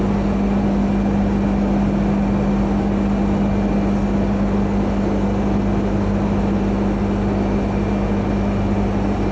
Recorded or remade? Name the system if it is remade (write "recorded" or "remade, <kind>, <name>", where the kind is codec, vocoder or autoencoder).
recorded